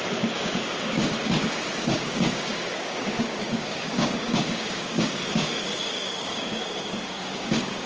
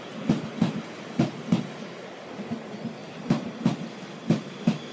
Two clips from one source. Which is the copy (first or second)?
first